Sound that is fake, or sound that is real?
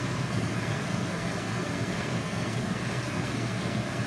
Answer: fake